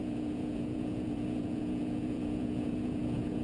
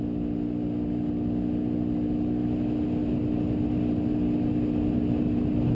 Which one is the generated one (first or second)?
first